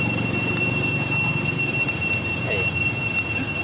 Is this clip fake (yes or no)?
no